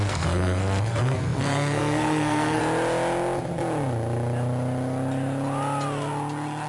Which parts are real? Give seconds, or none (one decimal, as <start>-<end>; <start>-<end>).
2.6-6.7